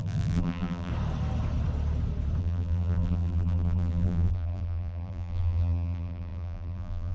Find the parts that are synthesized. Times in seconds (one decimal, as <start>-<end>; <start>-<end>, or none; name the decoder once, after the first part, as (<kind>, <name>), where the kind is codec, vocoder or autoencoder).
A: 0.0-0.9 (vocoder, BigVGAN v2); 2.4-7.1